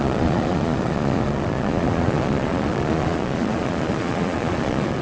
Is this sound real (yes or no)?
no